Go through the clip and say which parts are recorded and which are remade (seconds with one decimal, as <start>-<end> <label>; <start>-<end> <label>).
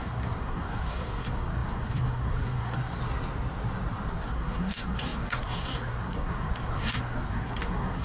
0.0-3.0 remade; 3.0-4.1 recorded; 4.1-8.0 remade